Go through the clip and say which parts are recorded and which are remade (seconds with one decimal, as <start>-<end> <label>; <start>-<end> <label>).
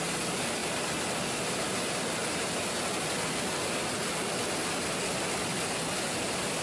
0.0-6.6 recorded